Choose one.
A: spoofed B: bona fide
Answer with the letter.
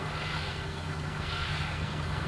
A